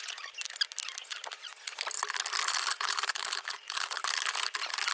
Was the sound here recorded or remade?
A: recorded